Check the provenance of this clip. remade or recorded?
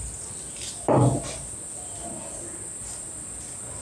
recorded